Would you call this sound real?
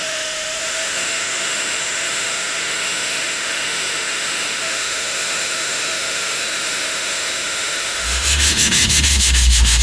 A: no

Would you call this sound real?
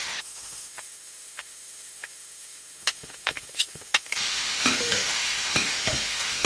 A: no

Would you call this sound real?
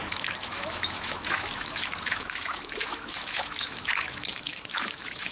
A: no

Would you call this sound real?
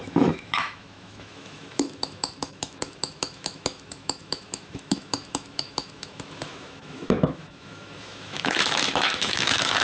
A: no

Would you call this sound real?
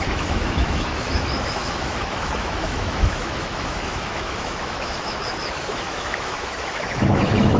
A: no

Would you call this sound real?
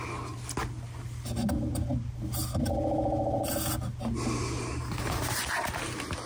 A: yes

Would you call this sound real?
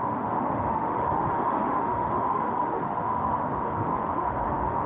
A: no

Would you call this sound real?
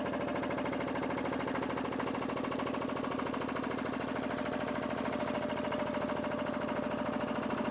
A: yes